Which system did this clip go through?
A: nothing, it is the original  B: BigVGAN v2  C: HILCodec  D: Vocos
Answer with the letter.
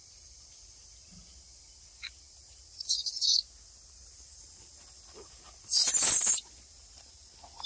A